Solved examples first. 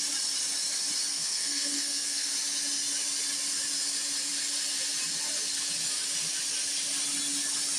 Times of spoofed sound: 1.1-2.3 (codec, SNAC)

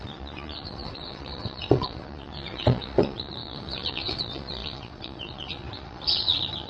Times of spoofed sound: 0.0-6.7 (vocoder, WaveNeXt)

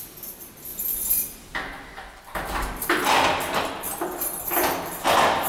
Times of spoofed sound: 0.7-2.9 (vocoder, BigVGAN v2)

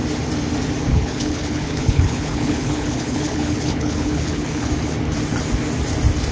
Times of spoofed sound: 0.9-4.7 (codec, HILCodec)

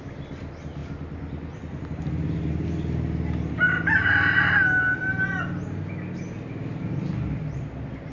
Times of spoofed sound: none

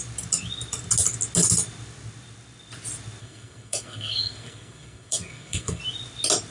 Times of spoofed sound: 3.2-5.8 (codec, SNAC)

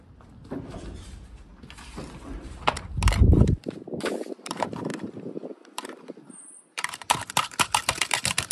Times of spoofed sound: 0.0-1.5 (vocoder, BigVGAN v2); 3.3-8.5

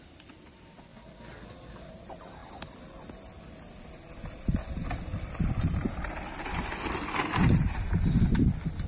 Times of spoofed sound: 0.9-1.9 (vocoder, WaveNeXt)